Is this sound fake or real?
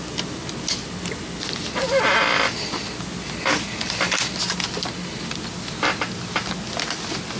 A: real